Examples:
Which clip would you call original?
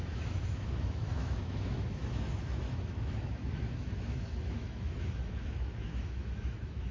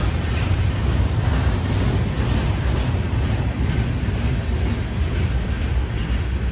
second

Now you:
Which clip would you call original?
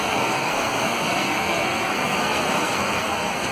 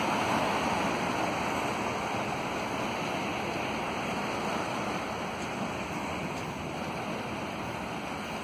second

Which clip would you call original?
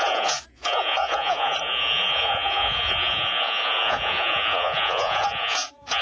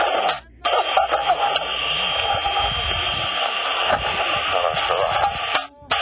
second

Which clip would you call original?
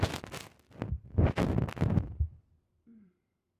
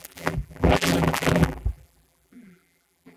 first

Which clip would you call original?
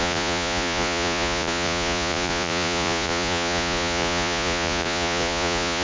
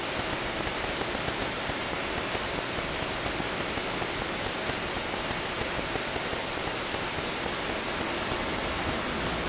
second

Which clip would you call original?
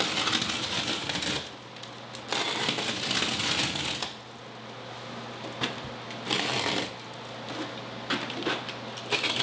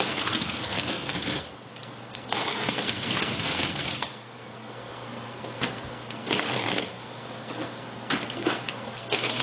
first